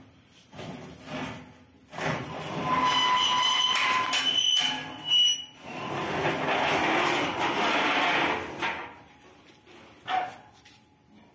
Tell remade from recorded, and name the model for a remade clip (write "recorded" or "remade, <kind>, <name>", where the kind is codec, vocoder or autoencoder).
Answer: recorded